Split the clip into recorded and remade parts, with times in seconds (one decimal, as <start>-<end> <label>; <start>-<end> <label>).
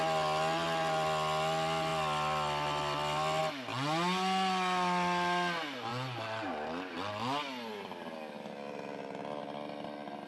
0.0-10.3 recorded